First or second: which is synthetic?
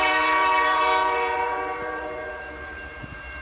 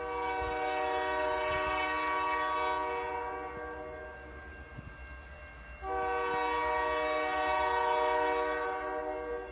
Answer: first